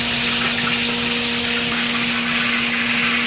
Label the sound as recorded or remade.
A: recorded